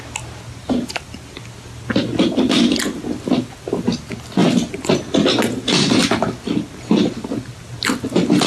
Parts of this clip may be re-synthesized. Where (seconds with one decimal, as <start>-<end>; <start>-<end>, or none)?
none